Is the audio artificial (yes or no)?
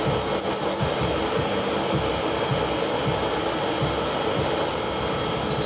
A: no